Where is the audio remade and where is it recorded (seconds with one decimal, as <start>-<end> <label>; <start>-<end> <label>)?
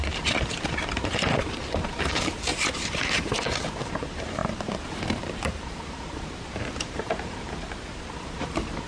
0.0-8.9 remade